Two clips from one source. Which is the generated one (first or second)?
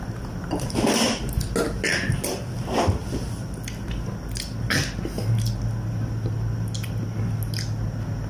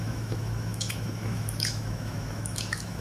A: second